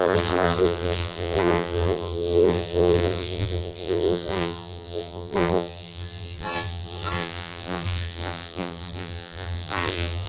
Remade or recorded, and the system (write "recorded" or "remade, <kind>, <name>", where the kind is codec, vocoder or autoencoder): remade, vocoder, BigVGAN v2